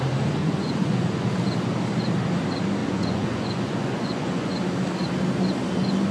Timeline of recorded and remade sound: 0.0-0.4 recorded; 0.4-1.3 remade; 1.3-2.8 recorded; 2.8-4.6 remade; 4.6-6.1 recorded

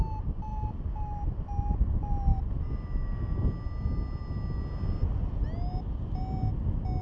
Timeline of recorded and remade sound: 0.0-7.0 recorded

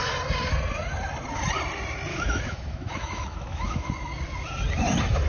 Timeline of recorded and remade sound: 0.0-2.1 recorded; 2.1-3.9 remade; 3.9-5.3 recorded

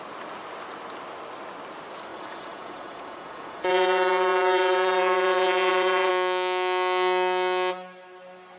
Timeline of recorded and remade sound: 0.0-2.1 recorded; 2.1-6.1 remade; 6.1-8.6 recorded

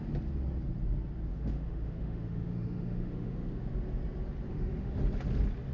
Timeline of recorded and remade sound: 0.0-1.3 recorded; 1.3-3.7 remade; 3.7-4.5 recorded; 4.5-5.0 remade; 5.0-5.7 recorded

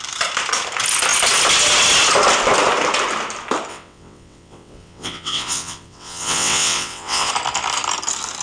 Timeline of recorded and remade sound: 0.0-3.7 recorded; 3.7-7.3 remade; 7.3-8.4 recorded

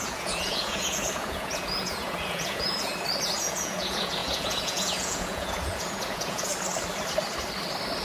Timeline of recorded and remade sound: 0.0-2.9 remade; 2.9-3.4 recorded; 3.4-6.5 remade; 6.5-8.0 recorded

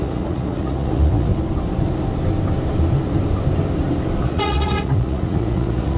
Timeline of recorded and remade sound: 0.0-1.3 remade; 1.3-4.2 recorded; 4.2-6.0 remade